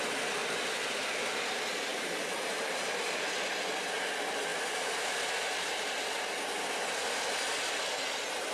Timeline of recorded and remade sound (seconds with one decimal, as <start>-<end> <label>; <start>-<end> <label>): 0.0-1.9 recorded; 1.9-3.2 remade; 3.2-8.5 recorded